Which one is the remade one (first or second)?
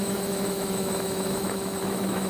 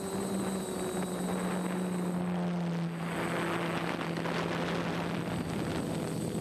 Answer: first